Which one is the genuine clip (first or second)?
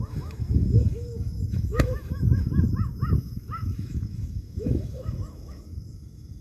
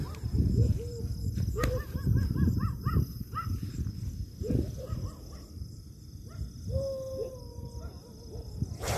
second